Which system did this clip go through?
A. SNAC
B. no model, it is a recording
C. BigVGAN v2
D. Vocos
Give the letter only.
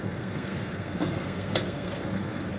A